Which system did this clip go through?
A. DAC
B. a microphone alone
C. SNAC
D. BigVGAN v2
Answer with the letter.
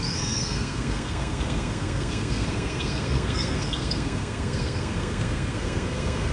C